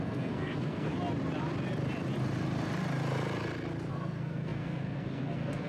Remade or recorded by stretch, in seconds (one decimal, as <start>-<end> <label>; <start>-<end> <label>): 0.0-0.9 remade; 0.9-3.9 recorded; 3.9-5.7 remade